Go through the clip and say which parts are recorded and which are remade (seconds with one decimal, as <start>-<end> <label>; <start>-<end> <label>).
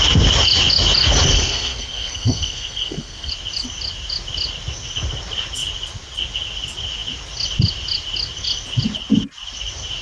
0.0-1.3 recorded; 1.3-3.3 remade; 3.3-10.0 recorded